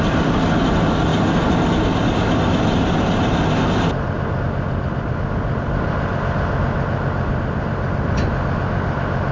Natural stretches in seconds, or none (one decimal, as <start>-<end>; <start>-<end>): 0.0-9.3

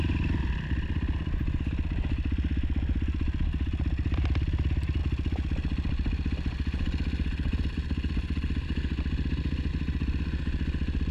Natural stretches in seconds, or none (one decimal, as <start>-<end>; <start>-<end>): 0.0-11.1

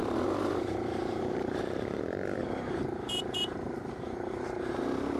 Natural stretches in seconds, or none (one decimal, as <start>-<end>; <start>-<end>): 2.0-2.4; 4.7-5.2

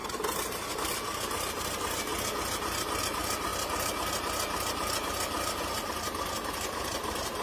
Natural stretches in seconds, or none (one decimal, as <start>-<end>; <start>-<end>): 2.1-3.0; 3.5-6.5

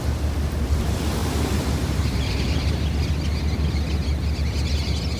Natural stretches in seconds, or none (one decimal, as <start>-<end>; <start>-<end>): 0.0-1.2; 2.8-5.2